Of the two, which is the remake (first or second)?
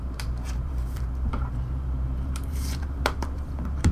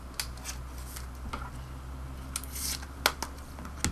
first